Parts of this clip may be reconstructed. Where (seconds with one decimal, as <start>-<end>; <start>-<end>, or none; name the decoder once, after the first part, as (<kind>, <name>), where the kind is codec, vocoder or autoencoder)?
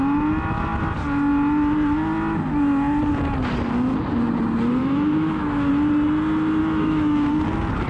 4.8-5.7 (autoencoder, DAC-VAE); 6.6-7.3